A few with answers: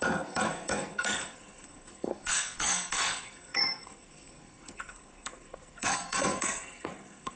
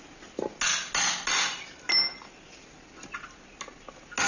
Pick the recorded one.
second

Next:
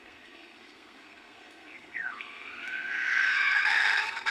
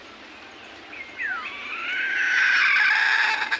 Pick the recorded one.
second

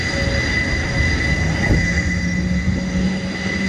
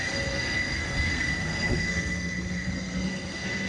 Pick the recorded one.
first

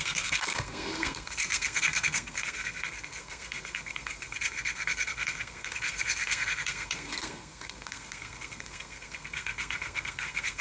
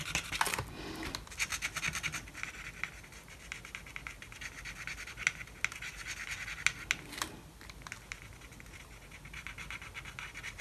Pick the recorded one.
second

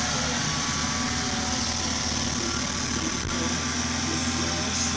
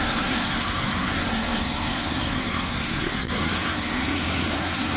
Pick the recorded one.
first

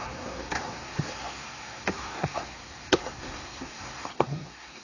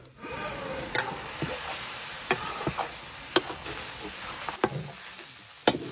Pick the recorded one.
second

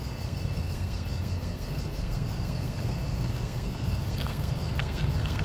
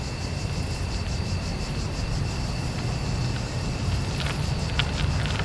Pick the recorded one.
second